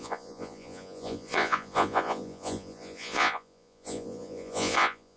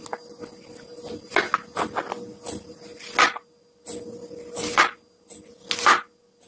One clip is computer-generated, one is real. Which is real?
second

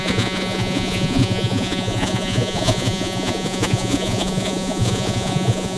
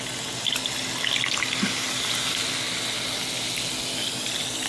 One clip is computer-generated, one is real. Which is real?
second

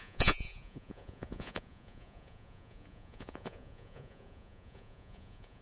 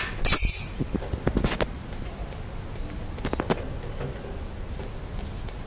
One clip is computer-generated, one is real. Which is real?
second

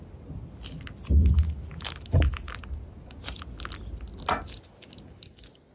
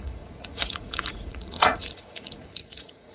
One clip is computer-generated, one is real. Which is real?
first